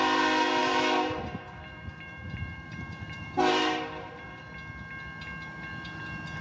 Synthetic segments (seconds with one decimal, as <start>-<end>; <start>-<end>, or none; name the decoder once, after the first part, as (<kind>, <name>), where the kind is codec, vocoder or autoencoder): 0.6-4.4 (vocoder, BigVGAN v2)